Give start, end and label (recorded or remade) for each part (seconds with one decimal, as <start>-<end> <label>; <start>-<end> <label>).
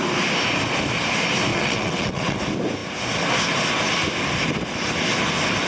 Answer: 0.0-1.5 recorded; 1.5-2.4 remade; 2.4-5.7 recorded